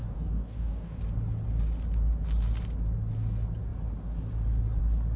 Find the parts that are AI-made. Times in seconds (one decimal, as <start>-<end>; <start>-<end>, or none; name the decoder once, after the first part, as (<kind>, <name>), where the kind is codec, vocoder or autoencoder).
0.0-1.0 (codec, DAC)